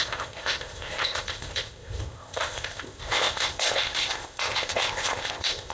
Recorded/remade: remade